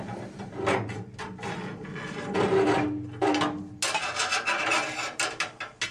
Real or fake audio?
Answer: real